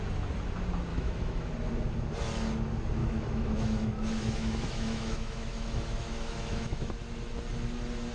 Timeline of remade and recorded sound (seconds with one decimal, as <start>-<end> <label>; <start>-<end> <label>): 0.0-0.9 recorded; 0.9-1.5 remade; 1.5-3.0 recorded; 3.0-6.9 remade; 6.9-8.1 recorded